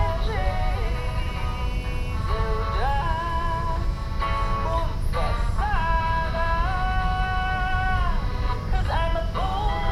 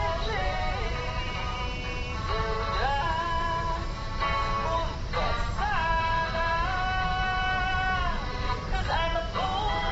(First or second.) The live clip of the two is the first